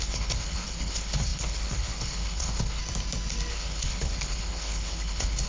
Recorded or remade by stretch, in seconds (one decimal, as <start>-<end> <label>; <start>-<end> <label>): 0.0-2.8 remade; 2.8-3.5 recorded; 3.5-5.5 remade